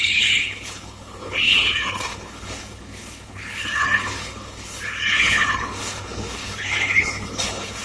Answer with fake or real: fake